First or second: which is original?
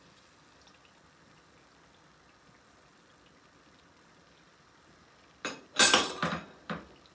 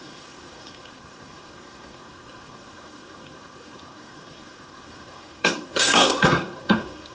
first